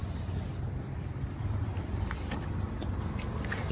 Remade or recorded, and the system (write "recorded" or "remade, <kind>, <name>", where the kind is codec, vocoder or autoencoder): recorded